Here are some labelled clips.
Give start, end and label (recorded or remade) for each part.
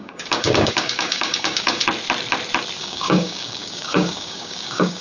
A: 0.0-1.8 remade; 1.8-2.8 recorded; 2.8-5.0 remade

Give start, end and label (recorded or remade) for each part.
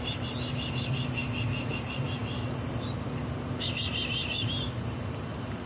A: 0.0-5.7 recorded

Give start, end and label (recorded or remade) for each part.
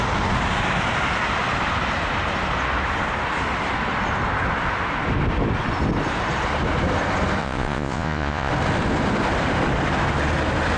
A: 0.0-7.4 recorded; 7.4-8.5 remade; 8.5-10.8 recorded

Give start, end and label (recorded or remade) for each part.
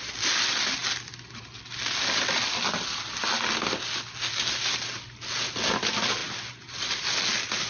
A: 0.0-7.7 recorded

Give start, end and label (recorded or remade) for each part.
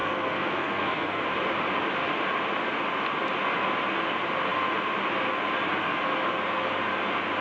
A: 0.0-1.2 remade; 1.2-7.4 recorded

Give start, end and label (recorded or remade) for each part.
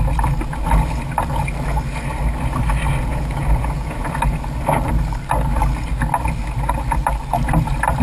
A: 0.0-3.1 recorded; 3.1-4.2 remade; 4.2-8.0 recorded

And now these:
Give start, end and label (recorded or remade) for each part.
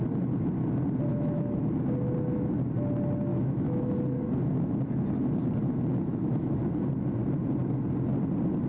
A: 0.0-1.1 recorded; 1.1-1.6 remade; 1.6-3.3 recorded; 3.3-3.9 remade; 3.9-6.1 recorded; 6.1-6.6 remade; 6.6-8.7 recorded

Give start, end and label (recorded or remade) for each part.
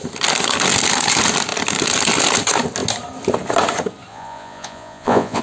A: 0.0-4.1 recorded; 4.1-5.4 remade